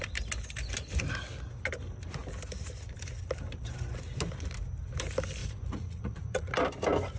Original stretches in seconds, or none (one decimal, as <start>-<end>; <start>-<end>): 0.0-5.4; 6.5-7.2